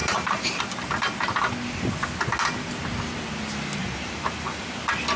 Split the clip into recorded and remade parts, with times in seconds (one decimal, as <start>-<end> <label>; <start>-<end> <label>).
0.0-0.6 remade; 0.6-3.8 recorded; 3.8-4.7 remade; 4.7-5.2 recorded